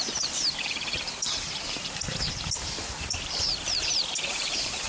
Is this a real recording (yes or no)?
no